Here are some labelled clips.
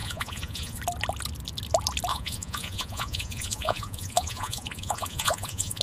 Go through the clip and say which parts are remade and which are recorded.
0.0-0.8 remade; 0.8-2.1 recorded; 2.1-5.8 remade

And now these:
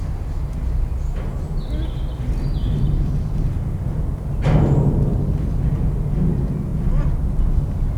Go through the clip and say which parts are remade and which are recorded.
0.0-8.0 recorded